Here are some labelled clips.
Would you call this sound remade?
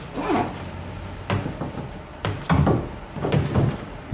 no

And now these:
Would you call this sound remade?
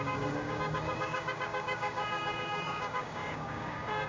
yes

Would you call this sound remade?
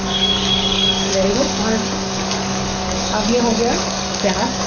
yes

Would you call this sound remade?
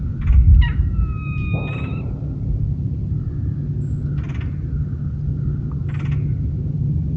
no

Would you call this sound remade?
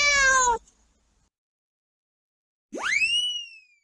no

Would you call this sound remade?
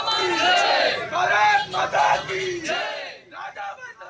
no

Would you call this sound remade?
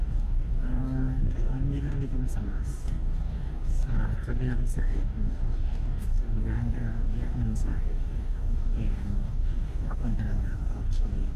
yes